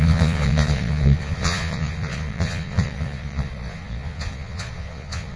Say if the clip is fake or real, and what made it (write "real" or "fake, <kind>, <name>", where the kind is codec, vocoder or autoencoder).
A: fake, vocoder, Vocos